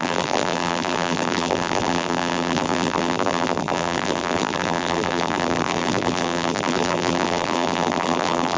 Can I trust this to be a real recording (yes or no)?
no